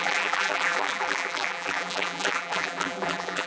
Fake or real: fake